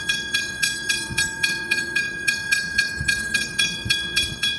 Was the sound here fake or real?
fake